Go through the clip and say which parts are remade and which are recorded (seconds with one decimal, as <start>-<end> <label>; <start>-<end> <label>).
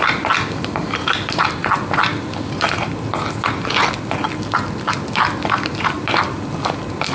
0.0-0.8 recorded; 0.8-2.9 remade; 2.9-7.1 recorded